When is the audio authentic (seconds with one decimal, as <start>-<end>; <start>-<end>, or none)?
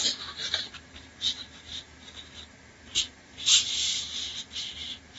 0.0-0.4; 3.5-5.2